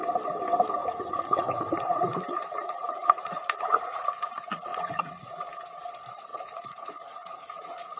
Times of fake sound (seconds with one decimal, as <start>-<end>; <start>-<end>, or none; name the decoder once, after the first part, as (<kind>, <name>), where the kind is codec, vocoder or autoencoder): 0.8-4.3 (vocoder, Vocos); 4.7-5.3; 6.3-8.0